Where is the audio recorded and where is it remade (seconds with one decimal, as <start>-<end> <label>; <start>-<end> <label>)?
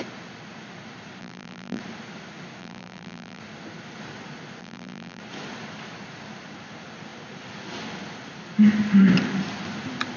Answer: 0.0-1.2 recorded; 1.2-1.8 remade; 1.8-2.6 recorded; 2.6-3.4 remade; 3.4-4.6 recorded; 4.6-5.2 remade; 5.2-10.2 recorded